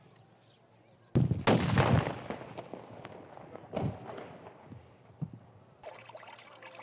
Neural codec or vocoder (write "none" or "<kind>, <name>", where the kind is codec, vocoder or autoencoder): none